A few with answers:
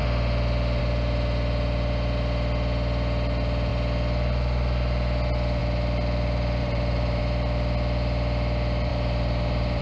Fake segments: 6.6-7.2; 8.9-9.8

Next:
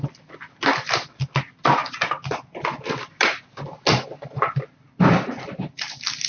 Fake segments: none

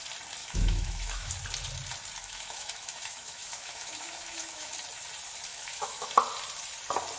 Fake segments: 0.4-1.3; 2.2-4.7; 5.5-6.1

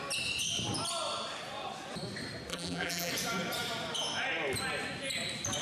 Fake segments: 2.5-3.1

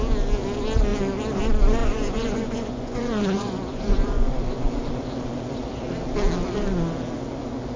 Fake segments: 1.8-4.3

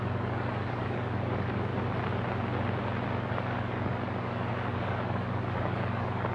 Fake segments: 0.0-1.7; 3.3-6.3